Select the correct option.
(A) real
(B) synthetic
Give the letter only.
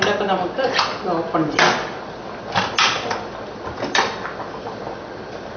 A